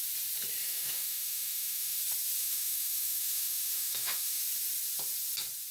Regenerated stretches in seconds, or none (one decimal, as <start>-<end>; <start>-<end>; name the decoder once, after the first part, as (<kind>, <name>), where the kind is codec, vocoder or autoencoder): 0.6-2.0 (autoencoder, DAC-VAE); 2.4-4.4